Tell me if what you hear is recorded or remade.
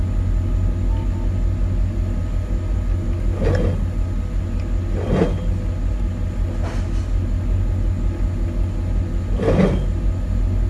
recorded